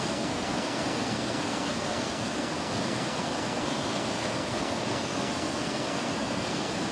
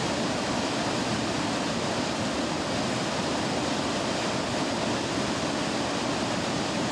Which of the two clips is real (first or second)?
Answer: second